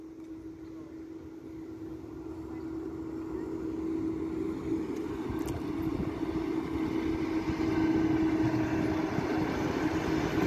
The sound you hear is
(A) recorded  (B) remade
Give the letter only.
A